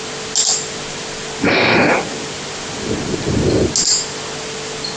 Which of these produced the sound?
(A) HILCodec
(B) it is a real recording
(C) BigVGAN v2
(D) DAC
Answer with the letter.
B